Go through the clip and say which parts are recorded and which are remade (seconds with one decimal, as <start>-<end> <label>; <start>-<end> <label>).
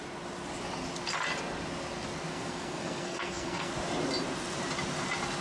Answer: 0.0-2.3 recorded; 2.3-3.7 remade; 3.7-5.4 recorded